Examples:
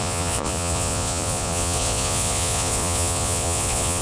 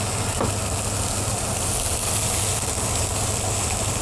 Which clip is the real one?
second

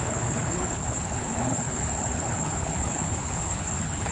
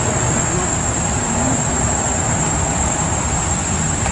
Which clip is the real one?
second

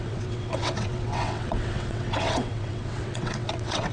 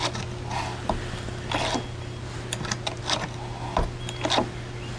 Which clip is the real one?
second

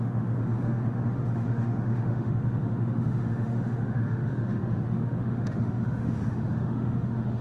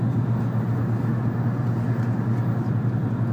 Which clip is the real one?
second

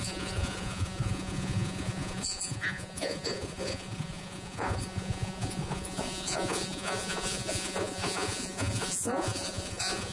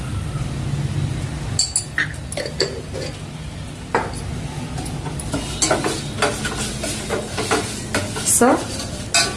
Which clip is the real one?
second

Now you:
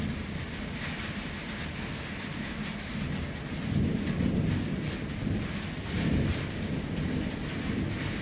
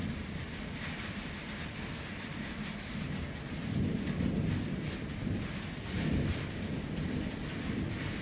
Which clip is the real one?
first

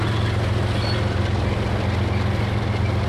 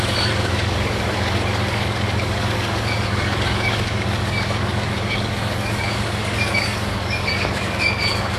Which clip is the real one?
first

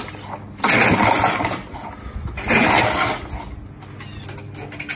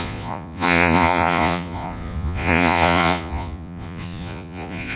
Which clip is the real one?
first